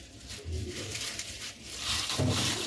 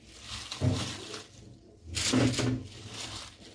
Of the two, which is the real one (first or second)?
second